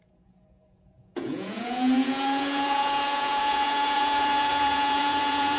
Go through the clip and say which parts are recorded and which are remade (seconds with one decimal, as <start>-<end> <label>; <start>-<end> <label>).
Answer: 0.0-5.6 remade